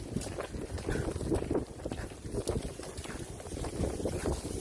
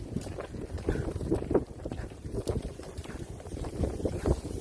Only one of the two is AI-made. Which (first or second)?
second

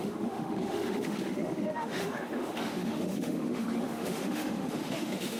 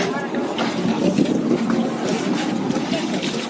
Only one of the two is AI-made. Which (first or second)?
first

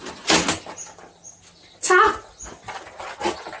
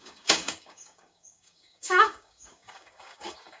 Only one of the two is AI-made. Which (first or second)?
second